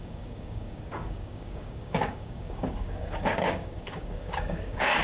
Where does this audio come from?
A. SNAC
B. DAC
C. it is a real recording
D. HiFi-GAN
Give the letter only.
B